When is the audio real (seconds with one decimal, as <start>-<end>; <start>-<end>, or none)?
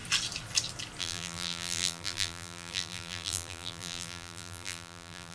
0.0-1.0